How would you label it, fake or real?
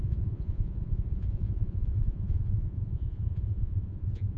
fake